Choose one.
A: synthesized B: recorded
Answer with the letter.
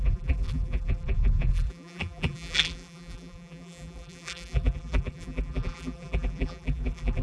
A